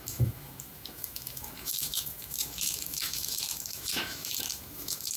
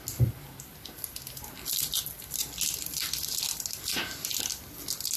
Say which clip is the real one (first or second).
second